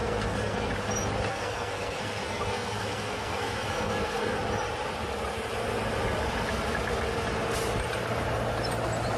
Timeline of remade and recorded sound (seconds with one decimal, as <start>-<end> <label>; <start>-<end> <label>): 0.0-0.7 remade; 0.7-1.3 recorded; 1.3-4.4 remade; 4.4-9.2 recorded